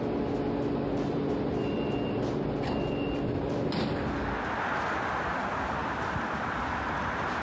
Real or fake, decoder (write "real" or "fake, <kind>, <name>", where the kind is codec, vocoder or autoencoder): real